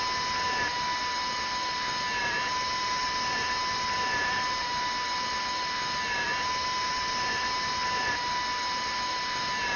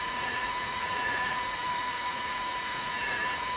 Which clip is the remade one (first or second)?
second